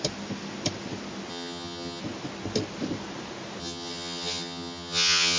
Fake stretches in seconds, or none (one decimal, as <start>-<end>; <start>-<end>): 1.3-2.0; 3.6-5.4